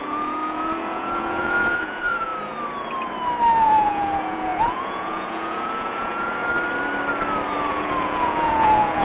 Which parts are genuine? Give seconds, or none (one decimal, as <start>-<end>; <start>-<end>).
2.3-3.6; 6.4-7.7